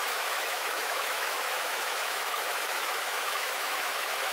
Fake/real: fake